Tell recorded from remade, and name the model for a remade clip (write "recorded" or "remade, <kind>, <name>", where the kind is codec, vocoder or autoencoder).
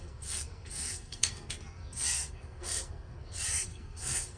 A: remade, codec, SNAC